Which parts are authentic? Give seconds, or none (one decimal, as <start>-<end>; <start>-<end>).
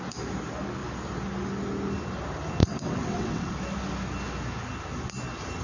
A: 0.0-2.6; 3.5-5.6